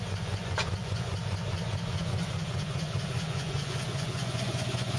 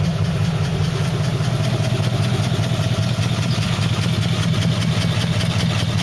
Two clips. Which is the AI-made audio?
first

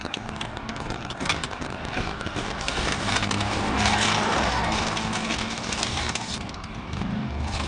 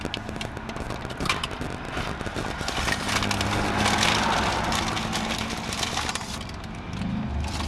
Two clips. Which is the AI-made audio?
first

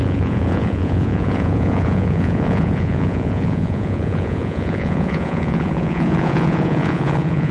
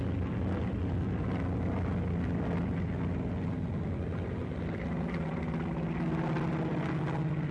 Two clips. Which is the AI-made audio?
first